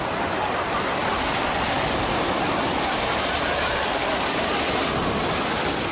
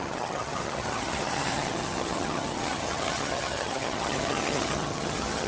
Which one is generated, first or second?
second